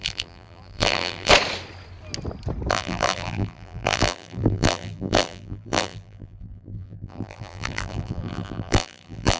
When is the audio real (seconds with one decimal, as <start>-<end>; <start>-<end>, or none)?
1.3-2.7

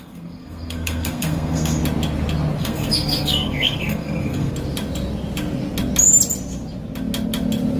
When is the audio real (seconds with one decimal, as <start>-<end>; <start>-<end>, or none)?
1.8-2.6; 4.5-7.8

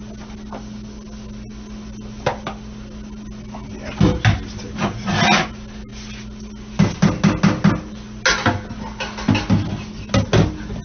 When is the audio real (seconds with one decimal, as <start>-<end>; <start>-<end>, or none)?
0.0-10.8

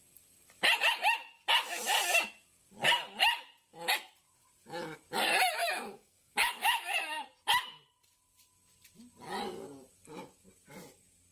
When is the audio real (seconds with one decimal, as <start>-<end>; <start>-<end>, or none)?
0.0-5.6; 6.9-11.3